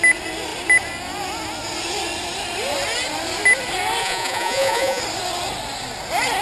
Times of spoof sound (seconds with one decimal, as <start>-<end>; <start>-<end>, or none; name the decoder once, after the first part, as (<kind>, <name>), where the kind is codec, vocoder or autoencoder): 4.0-5.0 (vocoder, Vocos)